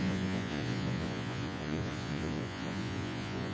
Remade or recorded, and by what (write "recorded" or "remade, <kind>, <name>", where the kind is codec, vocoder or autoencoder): remade, vocoder, Vocos